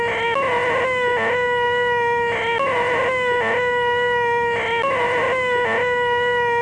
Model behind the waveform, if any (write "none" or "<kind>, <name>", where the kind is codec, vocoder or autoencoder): none